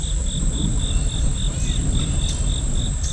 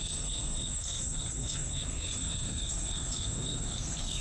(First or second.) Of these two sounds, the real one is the first